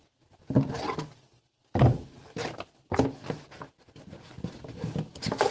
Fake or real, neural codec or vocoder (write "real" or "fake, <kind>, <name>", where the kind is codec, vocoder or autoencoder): real